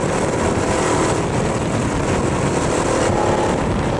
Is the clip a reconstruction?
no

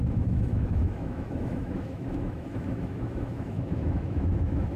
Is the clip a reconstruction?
yes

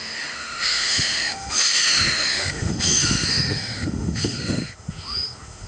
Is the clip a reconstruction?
yes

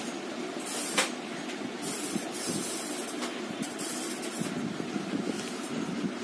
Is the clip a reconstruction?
no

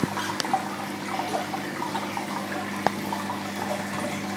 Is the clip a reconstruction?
no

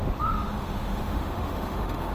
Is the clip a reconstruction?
yes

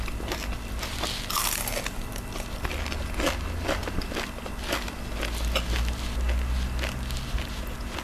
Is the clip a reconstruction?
no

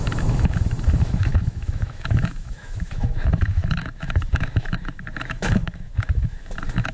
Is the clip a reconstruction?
yes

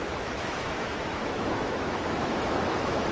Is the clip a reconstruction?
yes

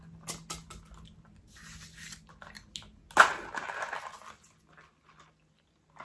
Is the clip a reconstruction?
no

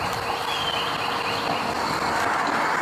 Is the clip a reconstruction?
no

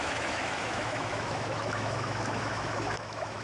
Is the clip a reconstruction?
yes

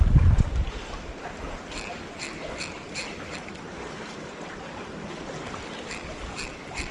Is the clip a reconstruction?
no